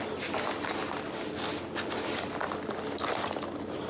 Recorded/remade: recorded